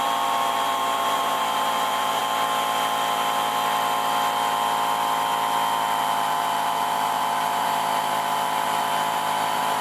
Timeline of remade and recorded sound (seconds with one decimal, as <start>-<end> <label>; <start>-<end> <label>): 0.0-2.2 remade; 2.2-6.0 recorded; 6.0-9.8 remade

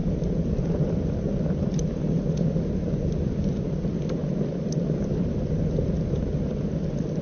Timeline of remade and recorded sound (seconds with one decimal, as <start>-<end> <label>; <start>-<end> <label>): 0.0-2.0 remade; 2.0-4.2 recorded; 4.2-5.3 remade; 5.3-7.2 recorded